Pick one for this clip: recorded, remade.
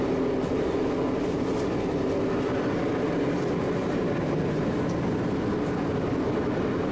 recorded